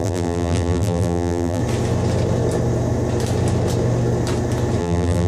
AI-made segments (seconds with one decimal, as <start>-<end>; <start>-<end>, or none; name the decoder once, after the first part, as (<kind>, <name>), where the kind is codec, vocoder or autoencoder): 0.0-1.6 (vocoder, BigVGAN v2); 4.8-5.3